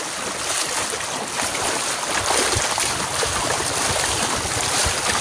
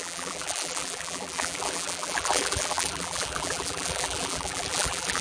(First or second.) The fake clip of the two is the second